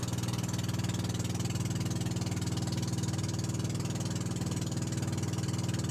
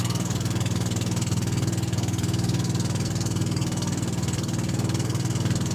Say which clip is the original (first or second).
first